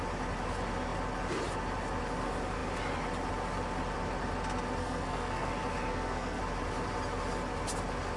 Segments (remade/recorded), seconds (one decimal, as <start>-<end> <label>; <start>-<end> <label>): 0.0-4.8 recorded; 4.8-5.5 remade; 5.5-5.9 recorded; 5.9-6.4 remade; 6.4-8.2 recorded